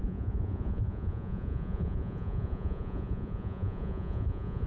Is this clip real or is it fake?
fake